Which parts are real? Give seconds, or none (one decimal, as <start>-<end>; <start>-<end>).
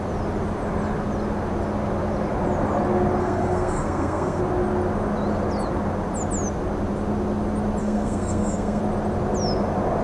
0.0-3.2; 4.4-7.8; 8.8-10.0